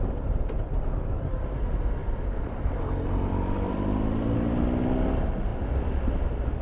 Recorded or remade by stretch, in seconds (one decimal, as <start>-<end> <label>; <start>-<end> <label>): 0.0-2.0 recorded; 2.0-4.6 remade; 4.6-5.5 recorded; 5.5-6.6 remade